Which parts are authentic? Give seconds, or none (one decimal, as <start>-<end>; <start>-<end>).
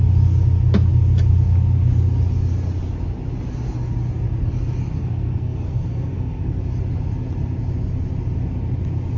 0.0-5.0; 6.6-9.2